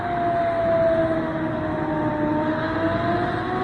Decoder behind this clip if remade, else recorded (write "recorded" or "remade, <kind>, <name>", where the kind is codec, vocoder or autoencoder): recorded